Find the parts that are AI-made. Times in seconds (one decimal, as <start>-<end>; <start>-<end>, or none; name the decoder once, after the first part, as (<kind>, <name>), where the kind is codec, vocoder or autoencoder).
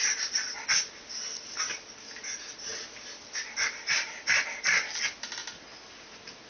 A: 0.0-1.6 (vocoder, BigVGAN v2); 2.7-3.8